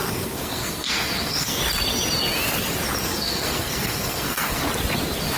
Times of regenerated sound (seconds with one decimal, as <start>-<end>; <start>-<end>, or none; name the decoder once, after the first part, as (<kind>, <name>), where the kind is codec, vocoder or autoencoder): 0.0-1.6 (codec, SNAC); 3.0-4.6